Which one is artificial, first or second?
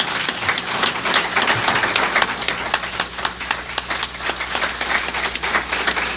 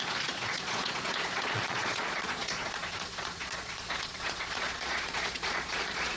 second